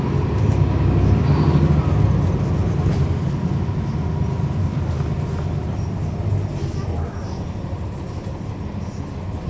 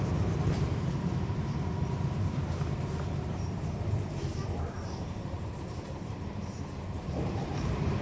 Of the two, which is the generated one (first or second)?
second